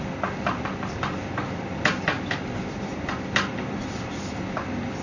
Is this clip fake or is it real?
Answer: real